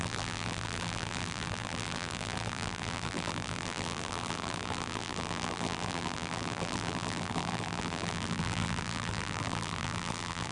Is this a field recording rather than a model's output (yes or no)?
no